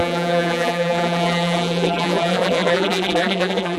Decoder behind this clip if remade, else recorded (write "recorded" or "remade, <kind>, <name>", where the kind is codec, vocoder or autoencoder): remade, vocoder, BigVGAN v2